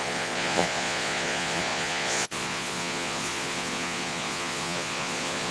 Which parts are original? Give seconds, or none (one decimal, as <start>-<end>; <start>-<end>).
none